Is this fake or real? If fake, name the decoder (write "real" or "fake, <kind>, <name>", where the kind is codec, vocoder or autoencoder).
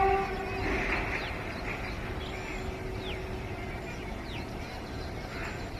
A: real